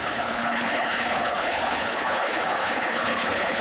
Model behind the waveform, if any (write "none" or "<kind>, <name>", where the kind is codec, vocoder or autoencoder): codec, HILCodec